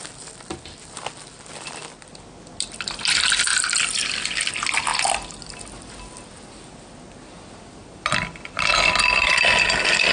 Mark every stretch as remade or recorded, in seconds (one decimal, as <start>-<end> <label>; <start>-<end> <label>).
0.0-10.1 recorded